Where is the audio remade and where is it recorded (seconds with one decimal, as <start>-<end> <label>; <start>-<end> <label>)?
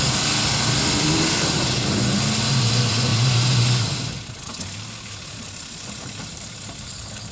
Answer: 0.0-7.3 recorded